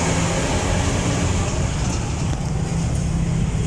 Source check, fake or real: real